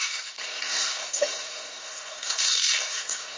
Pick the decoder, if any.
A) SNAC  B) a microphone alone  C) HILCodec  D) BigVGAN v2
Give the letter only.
A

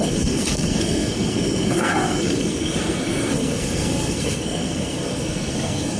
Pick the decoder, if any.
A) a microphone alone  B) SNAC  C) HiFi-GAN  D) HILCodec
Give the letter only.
B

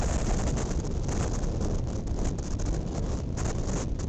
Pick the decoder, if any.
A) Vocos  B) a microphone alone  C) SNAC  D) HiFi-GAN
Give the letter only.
B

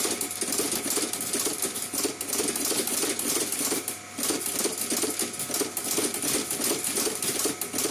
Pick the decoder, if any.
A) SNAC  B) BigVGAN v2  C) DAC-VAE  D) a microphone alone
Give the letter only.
D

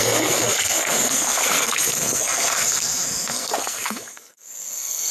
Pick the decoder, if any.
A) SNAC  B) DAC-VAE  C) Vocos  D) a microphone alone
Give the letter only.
A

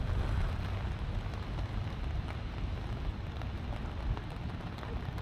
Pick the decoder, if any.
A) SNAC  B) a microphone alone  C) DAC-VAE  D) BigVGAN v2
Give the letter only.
B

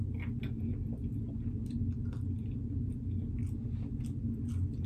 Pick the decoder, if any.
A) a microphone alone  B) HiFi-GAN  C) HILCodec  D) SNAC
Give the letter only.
A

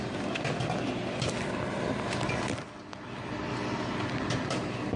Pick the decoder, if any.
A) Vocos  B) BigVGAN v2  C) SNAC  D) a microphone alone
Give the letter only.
D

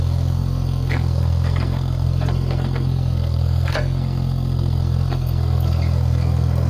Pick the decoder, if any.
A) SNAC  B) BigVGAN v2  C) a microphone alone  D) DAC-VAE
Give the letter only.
A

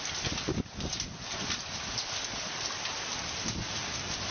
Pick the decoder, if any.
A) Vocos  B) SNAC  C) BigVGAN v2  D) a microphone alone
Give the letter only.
D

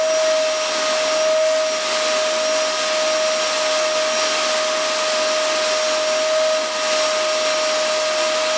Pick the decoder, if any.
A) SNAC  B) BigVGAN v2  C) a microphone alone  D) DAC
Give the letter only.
C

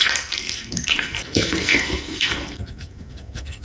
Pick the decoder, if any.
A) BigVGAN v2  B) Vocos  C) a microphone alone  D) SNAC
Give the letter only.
D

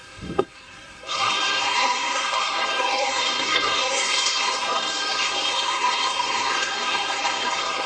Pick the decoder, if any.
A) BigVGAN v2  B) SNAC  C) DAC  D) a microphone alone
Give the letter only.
B